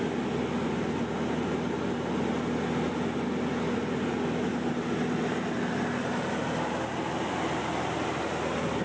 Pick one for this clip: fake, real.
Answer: real